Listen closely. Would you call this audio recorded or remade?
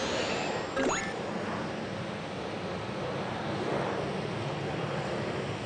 recorded